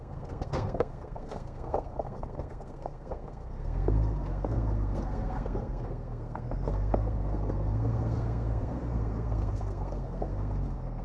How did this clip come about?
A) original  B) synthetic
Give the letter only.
B